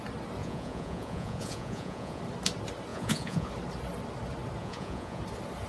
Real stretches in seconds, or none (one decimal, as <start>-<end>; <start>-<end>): 0.0-0.4; 2.2-2.9; 3.5-4.6; 5.2-5.7